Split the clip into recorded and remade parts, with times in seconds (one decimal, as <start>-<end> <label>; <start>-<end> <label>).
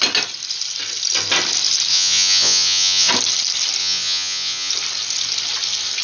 0.0-1.9 recorded; 1.9-3.1 remade; 3.1-3.8 recorded; 3.8-4.7 remade; 4.7-6.0 recorded